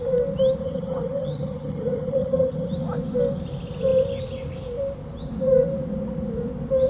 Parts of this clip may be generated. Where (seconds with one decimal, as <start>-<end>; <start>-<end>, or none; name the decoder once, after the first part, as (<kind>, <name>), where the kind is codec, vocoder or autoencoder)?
0.6-2.7 (vocoder, HiFi-GAN)